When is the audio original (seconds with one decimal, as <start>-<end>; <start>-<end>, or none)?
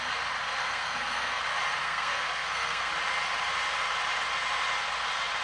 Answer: 0.0-0.6; 1.4-1.8; 2.9-5.4